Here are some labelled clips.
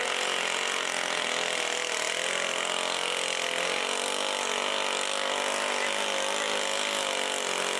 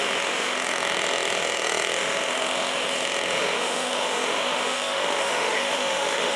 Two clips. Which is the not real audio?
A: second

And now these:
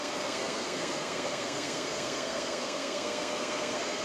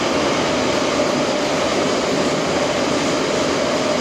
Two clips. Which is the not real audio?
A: first